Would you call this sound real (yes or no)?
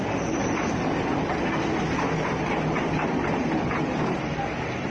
yes